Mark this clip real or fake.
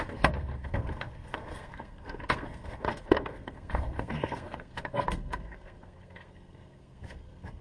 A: fake